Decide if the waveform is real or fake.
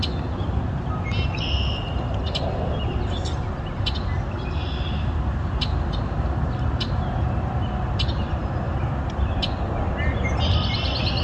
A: real